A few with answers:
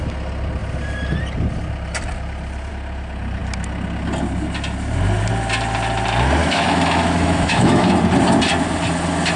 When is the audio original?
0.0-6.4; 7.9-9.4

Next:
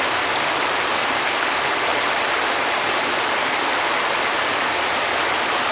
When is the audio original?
0.0-5.7

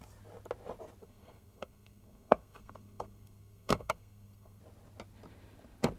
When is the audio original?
0.0-1.0; 4.6-6.0